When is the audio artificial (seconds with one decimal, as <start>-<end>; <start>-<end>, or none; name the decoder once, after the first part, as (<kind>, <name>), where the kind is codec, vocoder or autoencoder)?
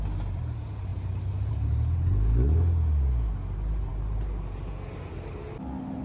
none